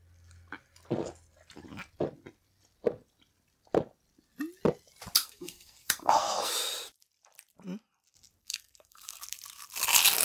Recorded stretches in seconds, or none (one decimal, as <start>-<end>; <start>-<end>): 0.0-5.2; 6.5-8.4; 9.2-10.2